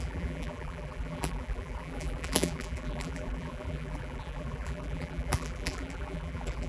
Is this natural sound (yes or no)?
no